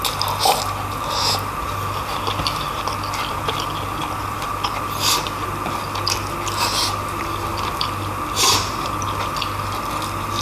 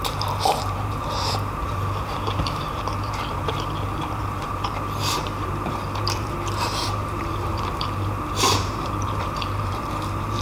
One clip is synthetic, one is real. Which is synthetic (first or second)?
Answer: second